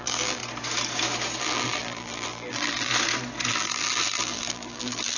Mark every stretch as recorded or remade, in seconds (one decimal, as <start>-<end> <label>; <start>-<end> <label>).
0.0-0.4 remade; 0.4-1.4 recorded; 1.4-2.9 remade; 2.9-3.5 recorded; 3.5-5.2 remade